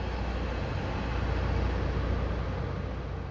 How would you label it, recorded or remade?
recorded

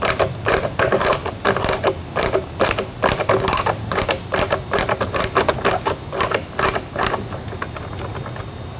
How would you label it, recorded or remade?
recorded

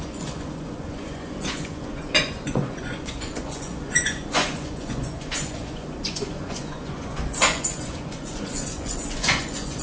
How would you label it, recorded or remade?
remade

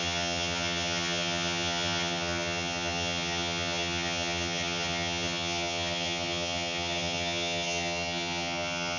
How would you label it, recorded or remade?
remade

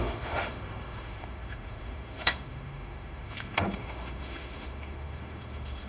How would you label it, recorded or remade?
remade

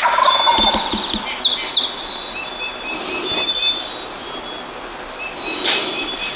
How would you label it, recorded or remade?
recorded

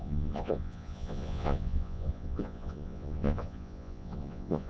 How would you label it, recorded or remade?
remade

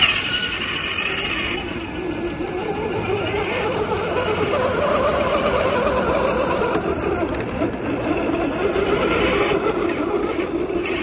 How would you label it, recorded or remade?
recorded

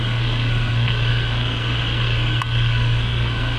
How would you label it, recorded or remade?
remade